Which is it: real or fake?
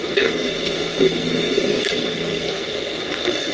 fake